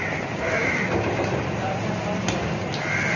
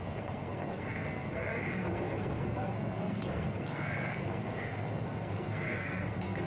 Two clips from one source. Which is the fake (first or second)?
second